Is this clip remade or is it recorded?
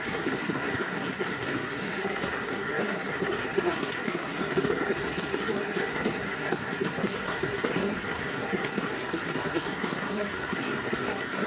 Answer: remade